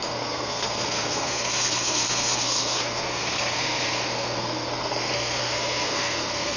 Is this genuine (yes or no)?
no